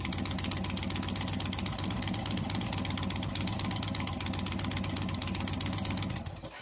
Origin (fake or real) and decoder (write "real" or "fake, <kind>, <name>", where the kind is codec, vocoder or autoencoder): real